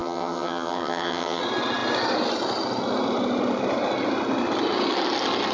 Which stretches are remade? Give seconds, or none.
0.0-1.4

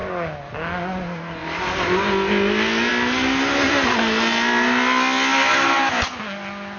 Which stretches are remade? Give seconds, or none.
none

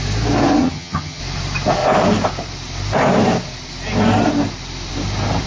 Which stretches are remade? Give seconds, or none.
0.6-1.2

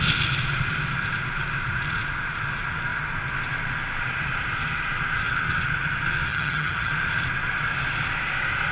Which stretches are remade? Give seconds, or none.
6.3-6.9

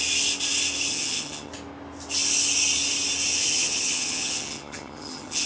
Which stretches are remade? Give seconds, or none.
0.9-1.5; 3.4-5.5

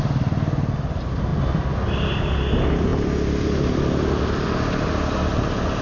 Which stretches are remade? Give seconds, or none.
none

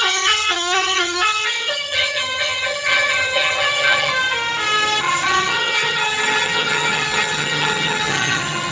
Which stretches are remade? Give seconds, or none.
0.0-4.1; 5.0-8.7

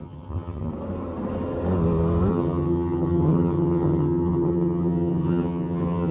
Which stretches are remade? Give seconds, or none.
0.0-0.7; 2.3-6.1